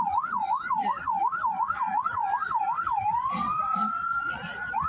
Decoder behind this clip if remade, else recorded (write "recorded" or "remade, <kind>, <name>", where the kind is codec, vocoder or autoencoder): remade, vocoder, Vocos